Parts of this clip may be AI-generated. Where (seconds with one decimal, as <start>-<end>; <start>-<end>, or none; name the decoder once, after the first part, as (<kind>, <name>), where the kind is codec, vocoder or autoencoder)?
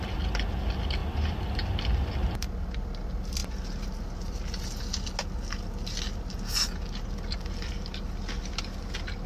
none